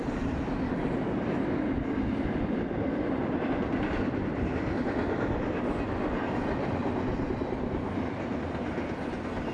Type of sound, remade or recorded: recorded